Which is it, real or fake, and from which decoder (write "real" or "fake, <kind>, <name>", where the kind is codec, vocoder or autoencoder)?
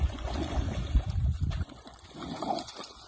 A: fake, vocoder, Vocos